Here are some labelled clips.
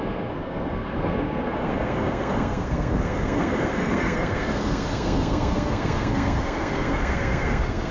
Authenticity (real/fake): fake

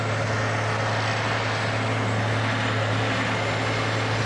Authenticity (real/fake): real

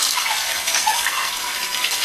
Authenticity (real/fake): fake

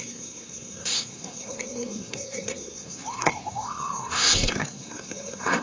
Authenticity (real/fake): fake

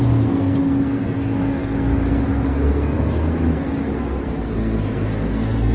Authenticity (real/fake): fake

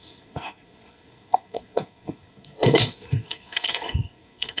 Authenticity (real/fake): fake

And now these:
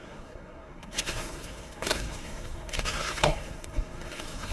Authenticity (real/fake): fake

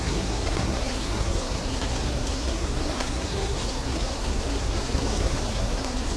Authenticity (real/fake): fake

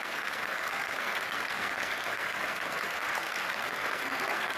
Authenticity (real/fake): fake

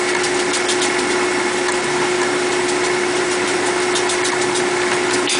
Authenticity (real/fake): real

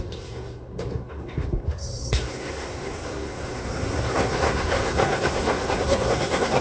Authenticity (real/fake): fake